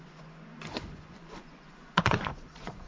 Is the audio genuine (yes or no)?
no